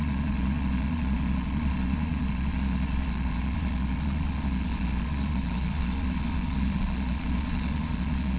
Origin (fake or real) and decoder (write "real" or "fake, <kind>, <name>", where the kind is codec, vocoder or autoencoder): fake, vocoder, Vocos